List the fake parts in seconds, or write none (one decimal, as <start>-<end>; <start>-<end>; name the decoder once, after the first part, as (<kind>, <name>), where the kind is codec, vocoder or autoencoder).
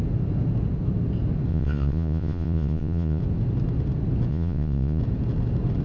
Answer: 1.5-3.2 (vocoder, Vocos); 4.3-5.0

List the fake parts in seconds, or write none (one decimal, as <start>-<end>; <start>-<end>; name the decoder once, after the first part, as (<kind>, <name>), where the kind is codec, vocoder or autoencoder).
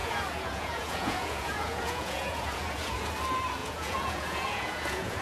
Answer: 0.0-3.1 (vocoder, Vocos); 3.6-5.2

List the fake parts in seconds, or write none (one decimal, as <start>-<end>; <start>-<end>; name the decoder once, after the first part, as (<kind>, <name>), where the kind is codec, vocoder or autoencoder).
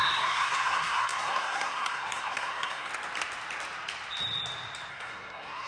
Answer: 0.0-2.9 (codec, SNAC); 4.9-5.7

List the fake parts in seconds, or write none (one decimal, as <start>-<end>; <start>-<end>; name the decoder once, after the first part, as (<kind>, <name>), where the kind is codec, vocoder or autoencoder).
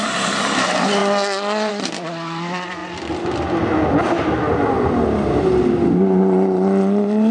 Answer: 0.0-1.0 (vocoder, BigVGAN v2); 1.7-2.8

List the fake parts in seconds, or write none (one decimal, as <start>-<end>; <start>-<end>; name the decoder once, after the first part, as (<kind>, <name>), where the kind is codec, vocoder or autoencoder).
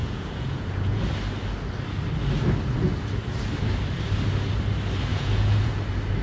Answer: 0.0-1.0 (vocoder, Vocos); 5.1-5.7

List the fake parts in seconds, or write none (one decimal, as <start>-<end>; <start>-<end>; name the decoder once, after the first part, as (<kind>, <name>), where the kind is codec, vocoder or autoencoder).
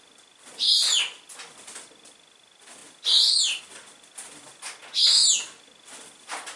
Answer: none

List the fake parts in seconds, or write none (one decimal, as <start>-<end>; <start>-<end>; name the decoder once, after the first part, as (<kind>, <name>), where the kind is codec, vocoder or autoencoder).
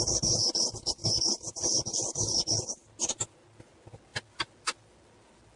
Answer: none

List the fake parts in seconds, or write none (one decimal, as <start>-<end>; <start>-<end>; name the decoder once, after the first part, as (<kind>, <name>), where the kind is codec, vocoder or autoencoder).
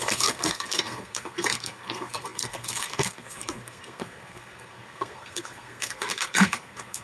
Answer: 0.0-7.0 (codec, SNAC)